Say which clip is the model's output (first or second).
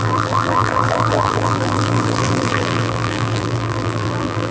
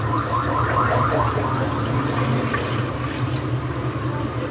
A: first